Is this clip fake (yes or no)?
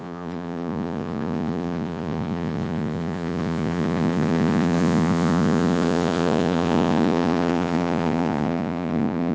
yes